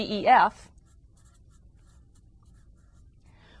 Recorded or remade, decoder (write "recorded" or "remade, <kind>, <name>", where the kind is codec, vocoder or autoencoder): recorded